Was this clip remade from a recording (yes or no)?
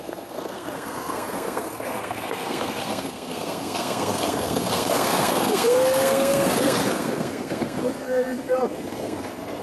yes